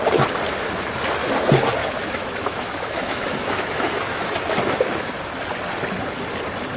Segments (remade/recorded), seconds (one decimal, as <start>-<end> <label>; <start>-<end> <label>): 0.0-1.8 recorded; 1.8-5.2 remade; 5.2-6.8 recorded